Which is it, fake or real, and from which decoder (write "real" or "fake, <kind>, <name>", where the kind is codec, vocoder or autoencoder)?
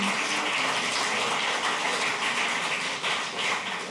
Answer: real